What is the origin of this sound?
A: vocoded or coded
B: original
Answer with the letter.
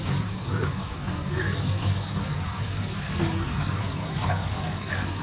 A